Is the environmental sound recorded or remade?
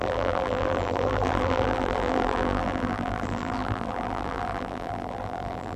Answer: remade